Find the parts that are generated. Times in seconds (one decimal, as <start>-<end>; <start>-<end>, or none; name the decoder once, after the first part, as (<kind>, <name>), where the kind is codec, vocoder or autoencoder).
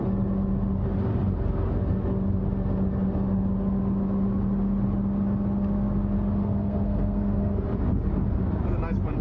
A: 6.4-7.4 (codec, SNAC)